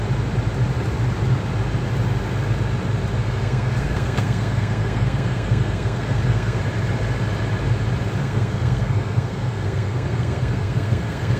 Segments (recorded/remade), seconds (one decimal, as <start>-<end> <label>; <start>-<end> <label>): 0.0-3.2 recorded; 3.2-6.6 remade; 6.6-8.2 recorded; 8.2-11.4 remade